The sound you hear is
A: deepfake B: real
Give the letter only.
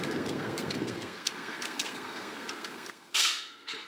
A